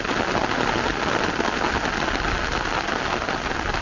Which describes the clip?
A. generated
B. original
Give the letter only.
B